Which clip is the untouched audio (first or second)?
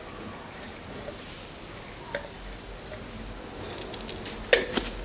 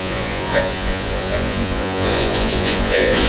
first